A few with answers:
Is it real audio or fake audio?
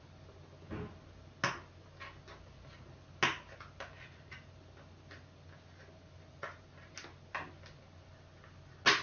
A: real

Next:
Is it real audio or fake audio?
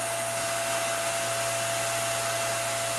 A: real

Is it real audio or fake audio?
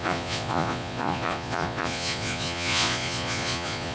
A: fake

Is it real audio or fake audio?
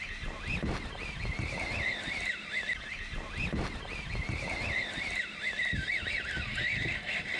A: real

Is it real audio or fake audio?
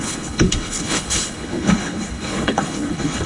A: fake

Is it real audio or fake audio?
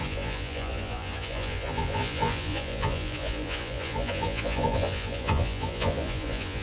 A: fake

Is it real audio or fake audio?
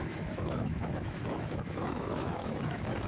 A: fake